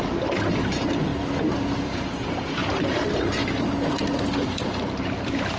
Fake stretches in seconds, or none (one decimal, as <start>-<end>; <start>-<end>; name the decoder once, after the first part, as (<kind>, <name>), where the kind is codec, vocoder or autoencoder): 1.1-2.0 (vocoder, BigVGAN v2); 2.6-5.6

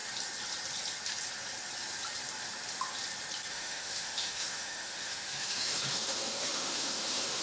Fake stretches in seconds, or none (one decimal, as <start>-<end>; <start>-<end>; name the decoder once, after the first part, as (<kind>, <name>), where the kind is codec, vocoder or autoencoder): 3.5-7.4 (autoencoder, DAC-VAE)

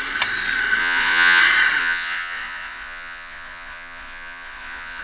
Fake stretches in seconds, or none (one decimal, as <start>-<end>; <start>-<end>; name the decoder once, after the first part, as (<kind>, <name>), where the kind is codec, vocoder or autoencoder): 0.8-1.4 (vocoder, Vocos); 1.8-5.0

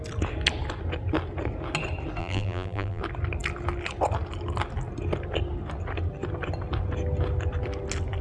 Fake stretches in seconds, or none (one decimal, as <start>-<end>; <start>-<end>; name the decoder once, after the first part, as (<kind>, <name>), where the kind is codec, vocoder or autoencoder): 2.2-3.0 (vocoder, BigVGAN v2)

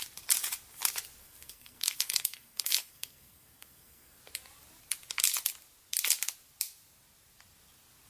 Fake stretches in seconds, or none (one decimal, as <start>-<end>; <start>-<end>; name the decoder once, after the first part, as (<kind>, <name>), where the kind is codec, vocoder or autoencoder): 1.2-4.2 (codec, SNAC)